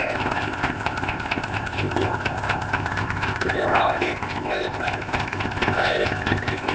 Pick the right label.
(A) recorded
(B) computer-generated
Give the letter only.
B